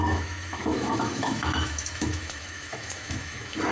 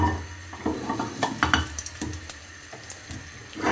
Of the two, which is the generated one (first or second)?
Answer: first